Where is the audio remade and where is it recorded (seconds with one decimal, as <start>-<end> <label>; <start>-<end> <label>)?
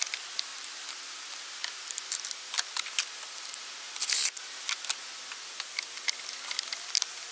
0.0-0.5 recorded; 0.5-1.2 remade; 1.2-7.3 recorded